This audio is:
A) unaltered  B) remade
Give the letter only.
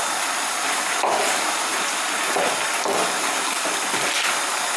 A